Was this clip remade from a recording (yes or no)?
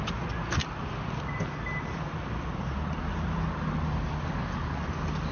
no